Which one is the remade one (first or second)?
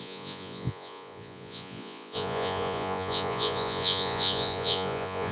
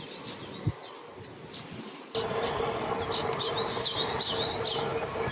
first